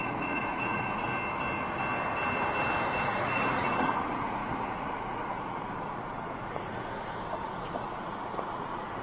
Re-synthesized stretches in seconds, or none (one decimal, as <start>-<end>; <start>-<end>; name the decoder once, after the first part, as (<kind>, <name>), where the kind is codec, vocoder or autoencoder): 0.0-1.1 (vocoder, Vocos); 3.0-9.0